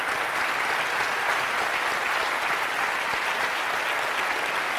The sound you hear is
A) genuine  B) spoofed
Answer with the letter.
A